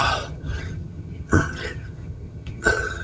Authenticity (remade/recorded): remade